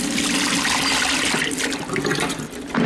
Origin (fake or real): real